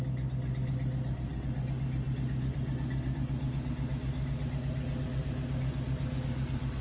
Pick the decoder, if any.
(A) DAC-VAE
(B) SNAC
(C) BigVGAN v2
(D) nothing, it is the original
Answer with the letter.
D